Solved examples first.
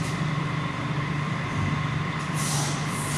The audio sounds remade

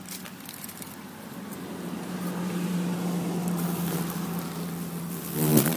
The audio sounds remade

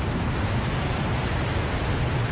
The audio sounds remade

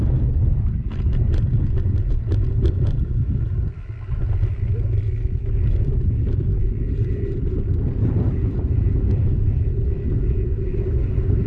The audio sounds recorded